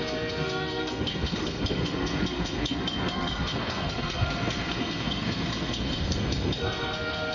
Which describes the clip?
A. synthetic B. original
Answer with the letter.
A